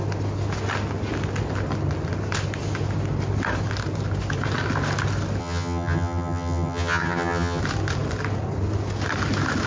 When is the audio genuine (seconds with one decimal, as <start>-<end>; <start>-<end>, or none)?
0.0-5.4; 7.6-9.7